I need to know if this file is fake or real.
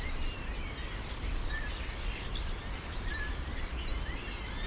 real